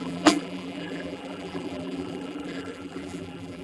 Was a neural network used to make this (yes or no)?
yes